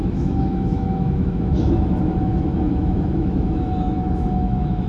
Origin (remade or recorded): remade